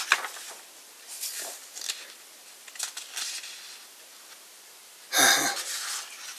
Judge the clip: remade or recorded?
recorded